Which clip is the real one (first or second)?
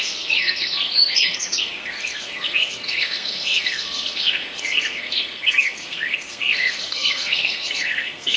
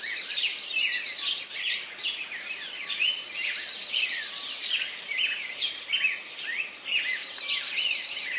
second